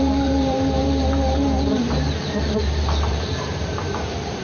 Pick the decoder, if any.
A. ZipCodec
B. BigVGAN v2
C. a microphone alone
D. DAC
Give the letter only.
B